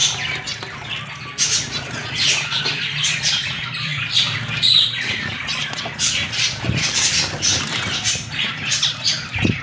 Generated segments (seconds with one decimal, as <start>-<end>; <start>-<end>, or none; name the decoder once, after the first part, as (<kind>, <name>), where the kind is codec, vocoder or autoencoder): 2.6-7.5 (vocoder, BigVGAN v2); 8.6-9.6